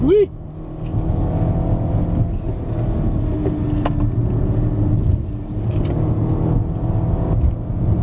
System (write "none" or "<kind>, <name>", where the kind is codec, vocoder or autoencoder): none